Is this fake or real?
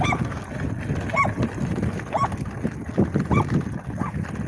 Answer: real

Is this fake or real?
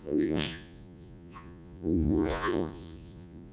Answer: fake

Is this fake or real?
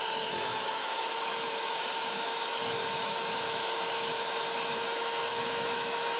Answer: fake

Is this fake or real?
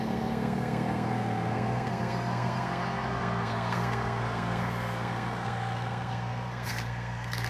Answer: fake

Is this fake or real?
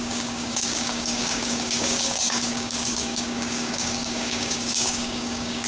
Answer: fake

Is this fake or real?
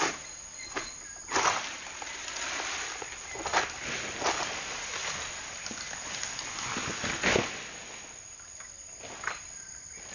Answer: real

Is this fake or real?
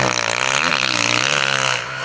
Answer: real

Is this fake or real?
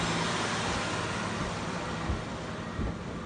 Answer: real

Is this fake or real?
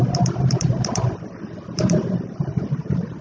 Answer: fake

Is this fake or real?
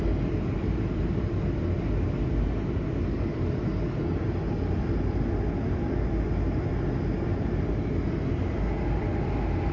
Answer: real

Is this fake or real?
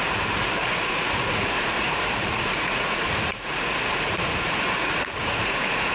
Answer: fake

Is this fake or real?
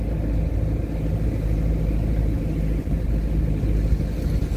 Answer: real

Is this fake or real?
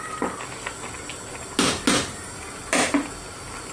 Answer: real